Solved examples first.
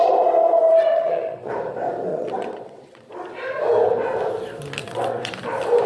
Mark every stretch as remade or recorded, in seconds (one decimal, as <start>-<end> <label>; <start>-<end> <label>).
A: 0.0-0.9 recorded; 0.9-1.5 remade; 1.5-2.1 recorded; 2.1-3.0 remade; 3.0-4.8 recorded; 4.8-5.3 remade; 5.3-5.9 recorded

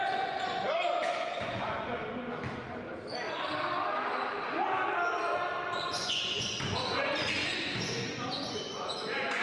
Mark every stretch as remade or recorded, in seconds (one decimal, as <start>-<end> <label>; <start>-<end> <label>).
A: 0.0-2.0 remade; 2.0-5.7 recorded; 5.7-9.4 remade

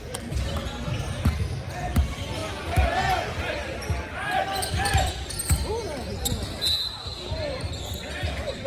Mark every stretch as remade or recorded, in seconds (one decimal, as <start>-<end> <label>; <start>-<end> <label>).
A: 0.0-8.7 recorded

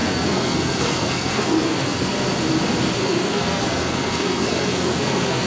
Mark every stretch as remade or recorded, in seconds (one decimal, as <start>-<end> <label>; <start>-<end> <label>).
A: 0.0-2.1 remade; 2.1-3.0 recorded; 3.0-5.5 remade

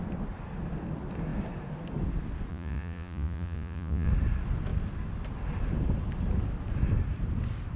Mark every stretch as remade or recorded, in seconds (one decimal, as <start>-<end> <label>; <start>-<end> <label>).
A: 0.0-2.5 recorded; 2.5-4.1 remade; 4.1-7.8 recorded

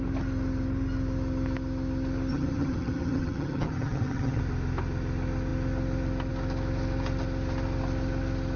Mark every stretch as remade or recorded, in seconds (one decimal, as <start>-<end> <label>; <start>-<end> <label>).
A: 0.0-2.3 recorded; 2.3-4.4 remade; 4.4-8.6 recorded

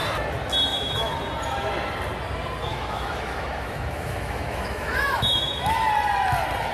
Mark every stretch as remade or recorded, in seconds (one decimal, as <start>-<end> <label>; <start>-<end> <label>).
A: 0.0-0.7 recorded; 0.7-1.2 remade; 1.2-2.7 recorded; 2.7-5.9 remade; 5.9-6.7 recorded

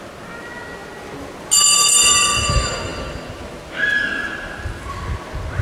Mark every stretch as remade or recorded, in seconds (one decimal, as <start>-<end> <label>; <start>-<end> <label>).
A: 0.0-5.6 recorded